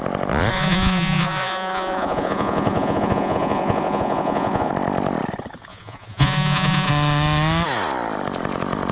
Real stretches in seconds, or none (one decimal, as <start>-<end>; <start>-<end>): 0.0-0.5; 4.7-5.7; 6.9-8.9